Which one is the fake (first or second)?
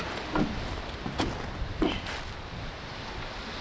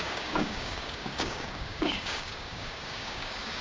second